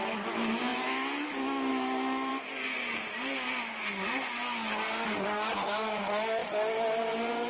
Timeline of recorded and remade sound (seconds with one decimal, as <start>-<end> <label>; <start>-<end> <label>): 0.0-2.3 remade; 2.3-5.5 recorded; 5.5-6.4 remade; 6.4-7.5 recorded

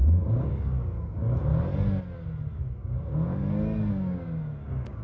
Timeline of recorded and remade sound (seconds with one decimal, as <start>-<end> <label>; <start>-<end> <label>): 0.0-1.5 remade; 1.5-2.5 recorded; 2.5-3.4 remade; 3.4-3.9 recorded; 3.9-5.0 remade